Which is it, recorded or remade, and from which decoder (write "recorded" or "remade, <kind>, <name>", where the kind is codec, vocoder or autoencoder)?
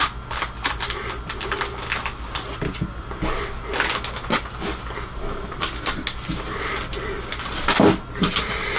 recorded